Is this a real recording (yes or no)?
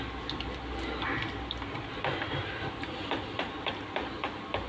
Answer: yes